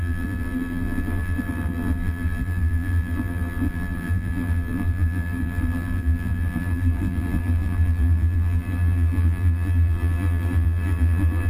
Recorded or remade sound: remade